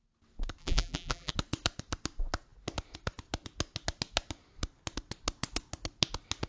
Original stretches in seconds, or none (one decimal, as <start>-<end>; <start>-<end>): 0.0-0.6; 1.3-6.5